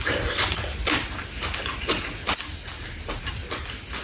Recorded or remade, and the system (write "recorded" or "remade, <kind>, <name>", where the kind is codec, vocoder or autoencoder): recorded